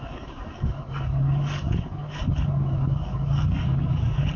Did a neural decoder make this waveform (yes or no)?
yes